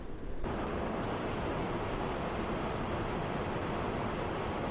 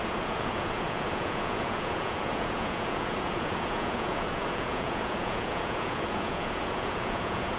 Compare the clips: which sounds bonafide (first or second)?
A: first